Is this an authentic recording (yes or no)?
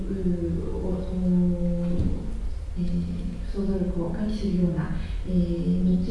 yes